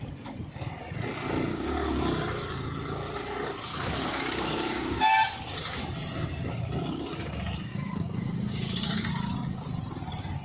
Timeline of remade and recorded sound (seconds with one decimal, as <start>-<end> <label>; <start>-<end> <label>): 0.0-1.5 recorded; 1.5-2.0 remade; 2.0-3.7 recorded; 3.7-5.8 remade; 5.8-7.7 recorded; 7.7-9.1 remade; 9.1-10.4 recorded